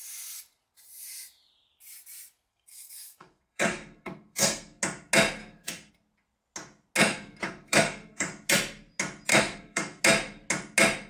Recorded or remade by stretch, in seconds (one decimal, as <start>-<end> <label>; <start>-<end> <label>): 0.0-2.5 recorded; 2.5-4.8 remade; 4.8-5.4 recorded; 5.4-5.9 remade; 5.9-7.0 recorded; 7.0-8.3 remade; 8.3-9.3 recorded; 9.3-10.0 remade; 10.0-11.1 recorded

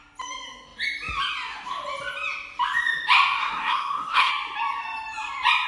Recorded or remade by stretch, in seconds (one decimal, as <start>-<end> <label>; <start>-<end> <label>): 0.0-3.4 recorded; 3.4-4.3 remade; 4.3-5.7 recorded

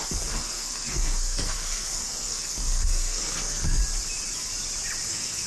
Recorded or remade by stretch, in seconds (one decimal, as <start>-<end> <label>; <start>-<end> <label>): 0.0-3.8 remade; 3.8-5.1 recorded; 5.1-5.5 remade

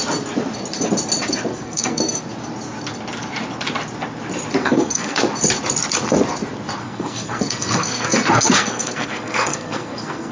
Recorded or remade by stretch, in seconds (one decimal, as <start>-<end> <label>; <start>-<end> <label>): 0.0-1.5 recorded; 1.5-2.2 remade; 2.2-4.6 recorded; 4.6-5.2 remade; 5.2-6.8 recorded; 6.8-10.3 remade

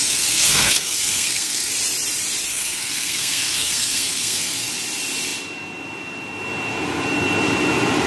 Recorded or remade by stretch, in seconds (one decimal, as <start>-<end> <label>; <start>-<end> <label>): 0.0-1.7 remade; 1.7-2.5 recorded; 2.5-4.7 remade; 4.7-8.1 recorded

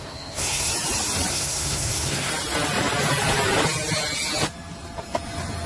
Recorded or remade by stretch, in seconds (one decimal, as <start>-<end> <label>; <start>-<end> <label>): 0.0-0.7 remade; 0.7-1.3 recorded; 1.3-2.3 remade; 2.3-5.7 recorded

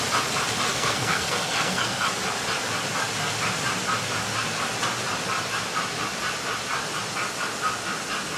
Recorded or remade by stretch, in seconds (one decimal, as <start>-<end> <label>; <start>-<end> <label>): 0.0-0.7 recorded; 0.7-2.1 remade; 2.1-8.4 recorded

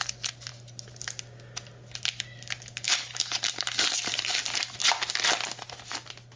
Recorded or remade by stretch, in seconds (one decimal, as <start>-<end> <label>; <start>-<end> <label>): 0.0-6.4 recorded